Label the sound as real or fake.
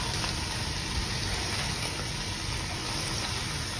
real